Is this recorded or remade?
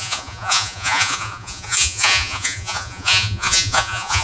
remade